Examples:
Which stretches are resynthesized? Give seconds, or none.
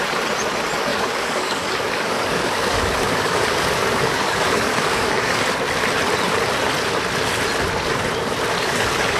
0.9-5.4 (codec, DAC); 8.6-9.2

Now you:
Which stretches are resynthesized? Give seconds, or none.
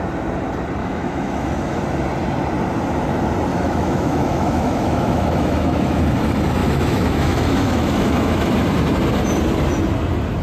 0.8-1.8 (autoencoder, DAC-VAE); 3.5-6.0; 6.6-8.5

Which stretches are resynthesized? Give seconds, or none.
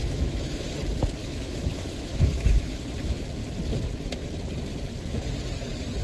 0.0-0.7 (autoencoder, DAC-VAE); 1.2-2.8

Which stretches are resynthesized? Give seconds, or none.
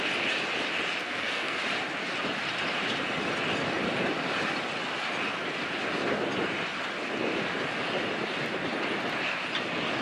1.0-1.6 (codec, SNAC)